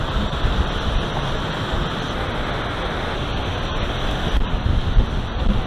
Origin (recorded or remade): recorded